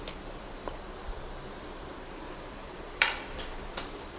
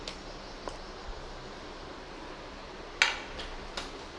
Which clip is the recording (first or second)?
second